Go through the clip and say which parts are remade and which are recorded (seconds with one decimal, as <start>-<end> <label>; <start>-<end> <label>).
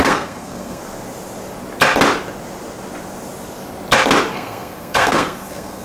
0.0-0.8 remade; 0.8-4.3 recorded; 4.3-5.8 remade